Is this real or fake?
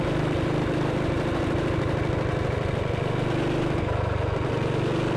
real